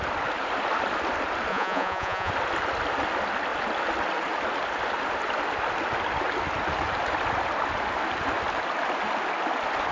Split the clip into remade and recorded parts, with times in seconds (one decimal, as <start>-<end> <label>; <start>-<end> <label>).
0.0-1.5 recorded; 1.5-2.3 remade; 2.3-9.9 recorded